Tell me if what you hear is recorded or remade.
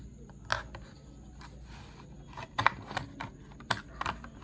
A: recorded